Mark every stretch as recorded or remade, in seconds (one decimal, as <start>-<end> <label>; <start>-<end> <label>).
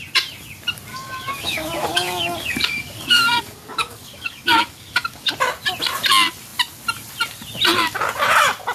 0.0-0.9 recorded; 0.9-5.3 remade; 5.3-8.7 recorded